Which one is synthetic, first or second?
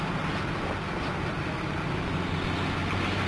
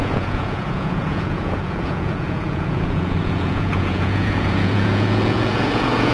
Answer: second